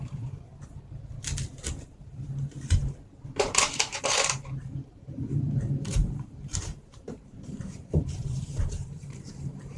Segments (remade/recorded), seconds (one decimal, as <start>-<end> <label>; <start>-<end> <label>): 0.0-0.5 remade; 0.5-1.7 recorded; 1.7-9.8 remade